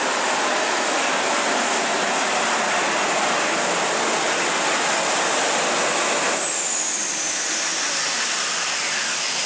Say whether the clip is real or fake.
real